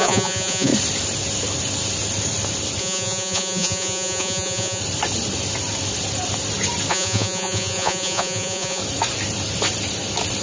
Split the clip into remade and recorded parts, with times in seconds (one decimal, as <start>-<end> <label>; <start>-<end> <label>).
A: 0.0-0.7 remade; 0.7-2.8 recorded; 2.8-4.8 remade; 4.8-6.9 recorded; 6.9-8.8 remade; 8.8-10.4 recorded